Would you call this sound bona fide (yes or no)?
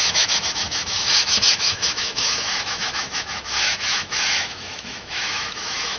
no